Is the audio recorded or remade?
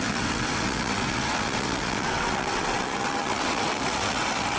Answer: remade